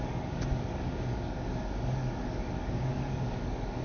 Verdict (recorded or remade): remade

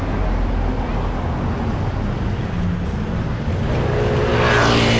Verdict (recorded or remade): recorded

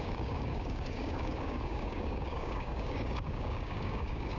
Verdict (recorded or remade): remade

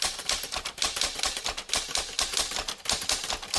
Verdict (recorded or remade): recorded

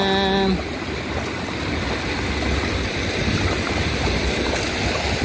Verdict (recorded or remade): recorded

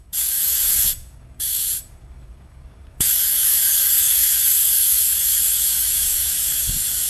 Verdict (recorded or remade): remade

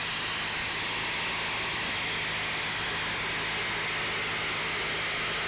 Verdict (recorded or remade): recorded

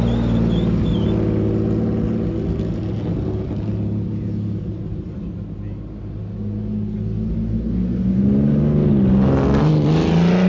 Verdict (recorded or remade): recorded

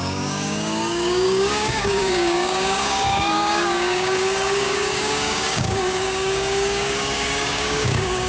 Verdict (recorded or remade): remade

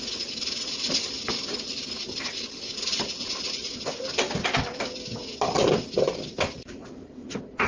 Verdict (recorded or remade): recorded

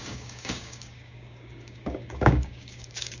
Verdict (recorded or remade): remade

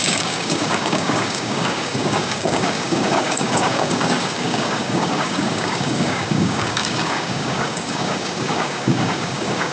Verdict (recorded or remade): remade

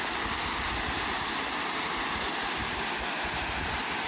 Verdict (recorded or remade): recorded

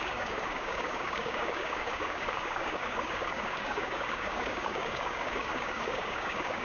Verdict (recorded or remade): remade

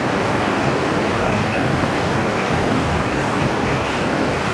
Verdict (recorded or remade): remade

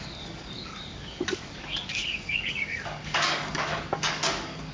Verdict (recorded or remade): remade